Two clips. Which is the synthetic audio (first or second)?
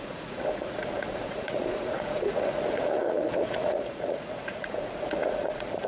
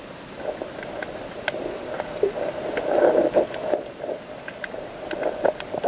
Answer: first